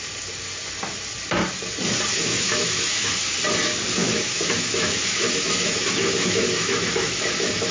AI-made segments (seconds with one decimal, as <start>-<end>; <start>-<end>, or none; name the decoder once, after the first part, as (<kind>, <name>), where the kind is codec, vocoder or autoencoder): 2.1-3.3 (autoencoder, DAC-VAE); 4.0-7.7